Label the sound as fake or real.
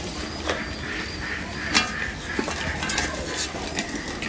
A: real